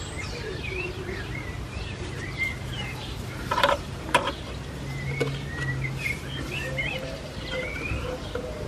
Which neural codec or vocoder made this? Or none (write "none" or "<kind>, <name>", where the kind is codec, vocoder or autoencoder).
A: vocoder, BigVGAN v2